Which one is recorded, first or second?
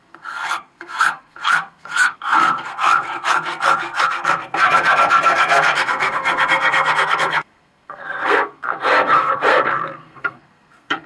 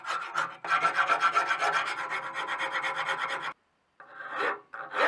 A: second